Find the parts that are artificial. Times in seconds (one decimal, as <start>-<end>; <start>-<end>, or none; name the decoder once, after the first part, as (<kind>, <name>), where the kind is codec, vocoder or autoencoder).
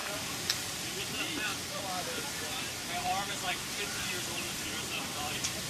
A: 1.0-1.5 (vocoder, BigVGAN v2); 2.6-5.7